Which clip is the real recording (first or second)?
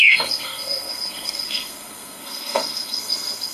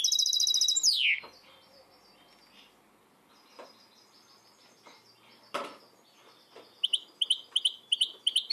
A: second